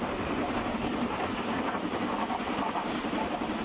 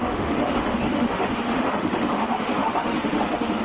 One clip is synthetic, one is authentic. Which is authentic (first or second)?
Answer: first